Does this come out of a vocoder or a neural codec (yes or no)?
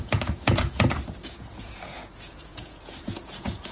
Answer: yes